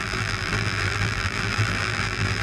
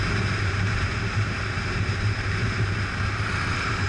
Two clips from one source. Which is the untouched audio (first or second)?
second